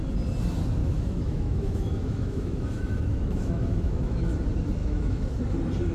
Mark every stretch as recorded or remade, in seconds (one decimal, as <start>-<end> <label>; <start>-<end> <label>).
0.0-0.8 recorded; 0.8-4.3 remade; 4.3-4.8 recorded; 4.8-5.4 remade; 5.4-5.9 recorded